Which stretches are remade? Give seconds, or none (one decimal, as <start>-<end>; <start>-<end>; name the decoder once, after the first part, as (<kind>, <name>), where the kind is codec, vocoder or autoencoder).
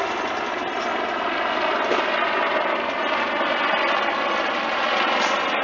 none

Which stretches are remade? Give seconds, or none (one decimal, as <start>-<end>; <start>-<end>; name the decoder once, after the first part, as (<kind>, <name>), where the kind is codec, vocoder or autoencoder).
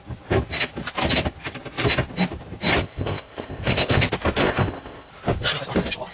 2.8-4.0 (codec, ZipCodec); 4.4-5.1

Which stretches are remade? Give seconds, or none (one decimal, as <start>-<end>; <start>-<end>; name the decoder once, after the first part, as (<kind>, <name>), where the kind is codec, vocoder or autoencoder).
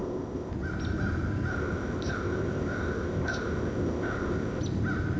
0.0-0.5 (codec, ZipCodec); 1.5-4.6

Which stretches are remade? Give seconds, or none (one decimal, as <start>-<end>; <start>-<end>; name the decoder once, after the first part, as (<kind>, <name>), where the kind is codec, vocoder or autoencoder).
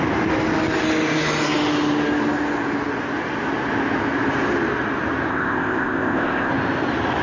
5.3-6.5 (codec, ZipCodec)